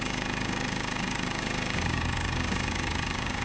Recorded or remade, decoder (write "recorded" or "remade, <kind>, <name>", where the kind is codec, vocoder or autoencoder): remade, codec, DAC